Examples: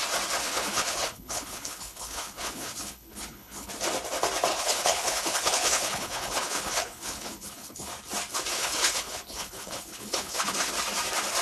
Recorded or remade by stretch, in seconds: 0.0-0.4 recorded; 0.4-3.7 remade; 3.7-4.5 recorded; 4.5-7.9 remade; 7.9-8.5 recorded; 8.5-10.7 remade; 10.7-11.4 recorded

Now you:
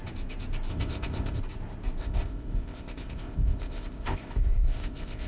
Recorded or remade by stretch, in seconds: 0.0-0.7 recorded; 0.7-1.4 remade; 1.4-2.0 recorded; 2.0-5.3 remade

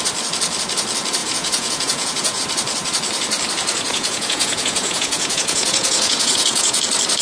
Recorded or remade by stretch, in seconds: 0.0-1.2 recorded; 1.2-2.4 remade; 2.4-3.9 recorded; 3.9-6.8 remade; 6.8-7.2 recorded

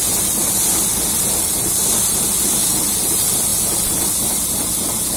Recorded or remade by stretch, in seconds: 0.0-5.2 recorded

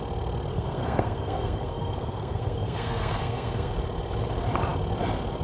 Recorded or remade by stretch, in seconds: 0.0-0.5 recorded; 0.5-3.7 remade; 3.7-5.4 recorded

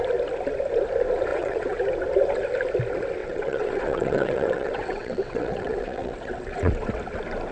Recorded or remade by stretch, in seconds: 0.0-1.3 recorded; 1.3-1.8 remade; 1.8-3.2 recorded; 3.2-6.9 remade; 6.9-7.5 recorded